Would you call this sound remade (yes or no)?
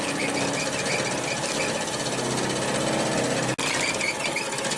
no